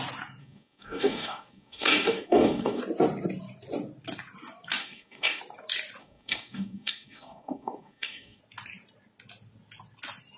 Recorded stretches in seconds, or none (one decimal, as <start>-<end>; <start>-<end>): 0.0-0.4; 2.8-4.8; 5.4-6.0; 8.4-10.4